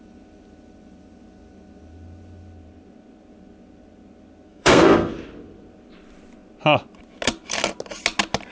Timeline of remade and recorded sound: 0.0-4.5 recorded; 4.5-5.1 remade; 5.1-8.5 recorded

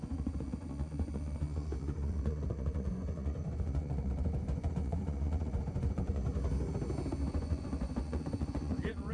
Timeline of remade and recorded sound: 0.0-6.2 remade; 6.2-7.3 recorded; 7.3-9.1 remade

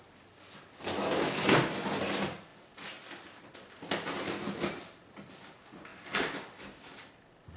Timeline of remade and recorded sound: 0.0-7.6 recorded

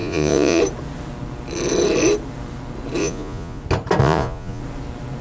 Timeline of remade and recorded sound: 0.0-0.6 remade; 0.6-3.0 recorded; 3.0-3.6 remade; 3.6-4.0 recorded; 4.0-4.6 remade; 4.6-5.2 recorded

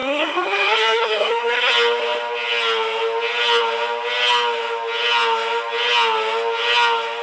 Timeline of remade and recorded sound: 0.0-1.7 remade; 1.7-7.2 recorded